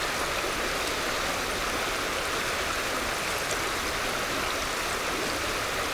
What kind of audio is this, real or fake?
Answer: real